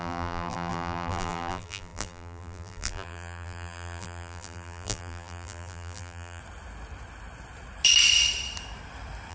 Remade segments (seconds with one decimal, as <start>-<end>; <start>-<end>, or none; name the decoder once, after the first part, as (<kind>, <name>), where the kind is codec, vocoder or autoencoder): 0.0-6.4 (vocoder, BigVGAN v2)